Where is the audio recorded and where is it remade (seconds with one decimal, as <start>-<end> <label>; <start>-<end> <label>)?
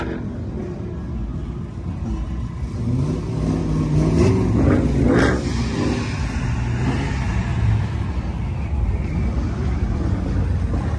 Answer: 0.0-7.5 recorded; 7.5-10.6 remade; 10.6-11.0 recorded